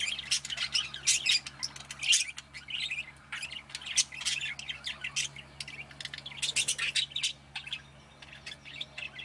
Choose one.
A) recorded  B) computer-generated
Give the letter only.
A